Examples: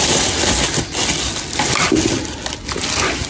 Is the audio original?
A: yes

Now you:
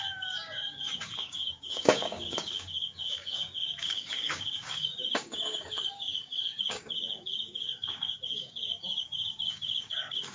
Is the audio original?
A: no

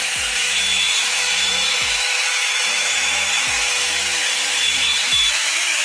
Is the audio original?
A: no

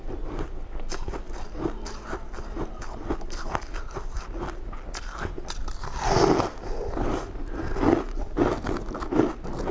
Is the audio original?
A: yes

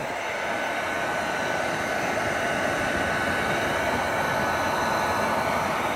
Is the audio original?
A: yes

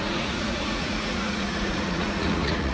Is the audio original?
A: no